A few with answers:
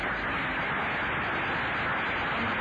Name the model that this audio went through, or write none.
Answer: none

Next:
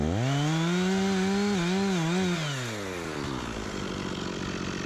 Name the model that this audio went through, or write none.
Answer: none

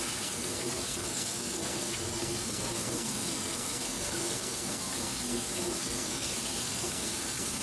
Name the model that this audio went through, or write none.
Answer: codec, SNAC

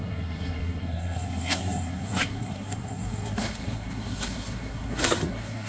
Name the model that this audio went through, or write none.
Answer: codec, SNAC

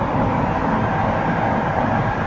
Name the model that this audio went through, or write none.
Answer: none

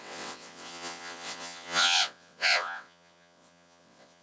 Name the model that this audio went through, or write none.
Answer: vocoder, WaveNeXt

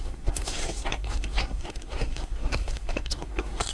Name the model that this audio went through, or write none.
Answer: codec, SNAC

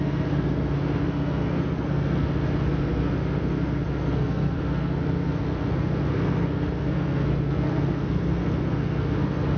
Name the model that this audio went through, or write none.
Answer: codec, SNAC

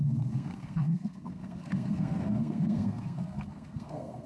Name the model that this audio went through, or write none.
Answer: codec, SNAC